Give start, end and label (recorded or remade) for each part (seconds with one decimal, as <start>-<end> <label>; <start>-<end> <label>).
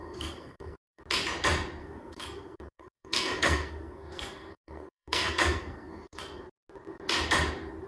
0.0-1.0 remade; 1.0-1.8 recorded; 1.8-6.2 remade; 6.2-7.9 recorded